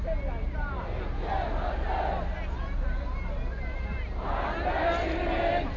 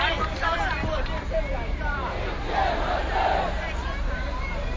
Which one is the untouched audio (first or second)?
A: first